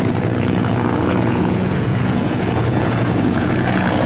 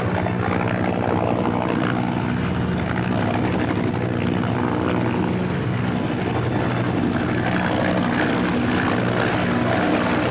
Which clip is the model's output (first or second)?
first